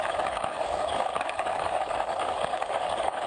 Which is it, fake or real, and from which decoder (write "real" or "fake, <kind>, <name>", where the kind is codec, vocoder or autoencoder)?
fake, codec, DAC